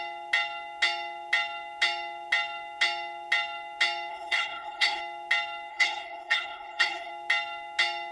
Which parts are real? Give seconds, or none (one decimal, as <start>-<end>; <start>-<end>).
0.0-4.1; 5.0-5.7; 7.1-8.1